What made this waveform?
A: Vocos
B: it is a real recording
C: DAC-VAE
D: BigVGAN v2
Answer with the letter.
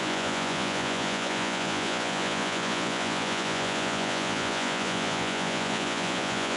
A